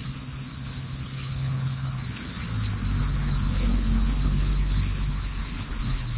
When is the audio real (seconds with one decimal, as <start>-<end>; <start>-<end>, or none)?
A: 2.4-3.0